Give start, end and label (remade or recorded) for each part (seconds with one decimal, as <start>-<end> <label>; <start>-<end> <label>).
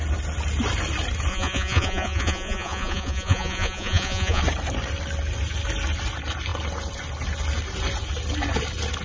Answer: 0.0-1.3 recorded; 1.3-4.4 remade; 4.4-9.0 recorded